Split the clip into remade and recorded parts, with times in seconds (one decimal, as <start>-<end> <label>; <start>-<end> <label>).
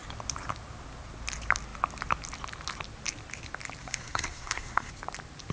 0.0-3.8 recorded; 3.8-4.9 remade; 4.9-5.5 recorded